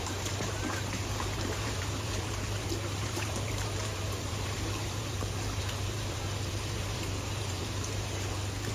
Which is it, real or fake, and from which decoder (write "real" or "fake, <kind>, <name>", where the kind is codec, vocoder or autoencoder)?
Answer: fake, vocoder, BigVGAN v2